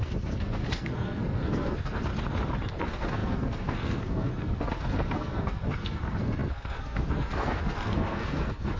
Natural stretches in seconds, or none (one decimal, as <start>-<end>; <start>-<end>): 2.1-2.8